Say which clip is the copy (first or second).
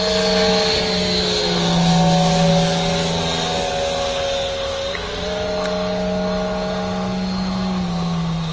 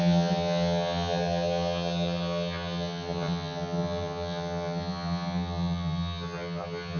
second